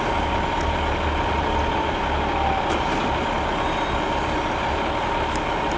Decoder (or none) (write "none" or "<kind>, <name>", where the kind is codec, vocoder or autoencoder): none